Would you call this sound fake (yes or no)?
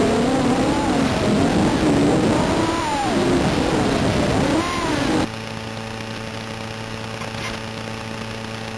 no